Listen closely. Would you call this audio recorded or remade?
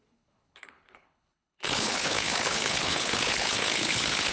remade